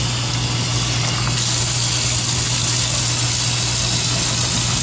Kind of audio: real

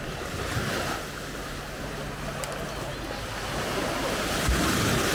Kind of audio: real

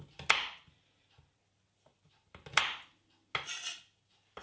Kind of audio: real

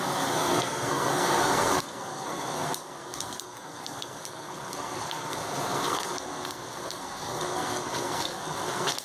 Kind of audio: fake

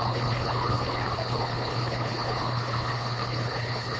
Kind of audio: fake